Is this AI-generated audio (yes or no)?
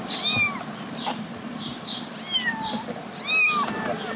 no